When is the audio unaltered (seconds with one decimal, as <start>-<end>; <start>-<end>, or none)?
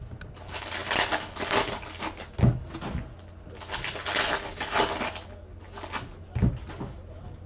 0.0-7.5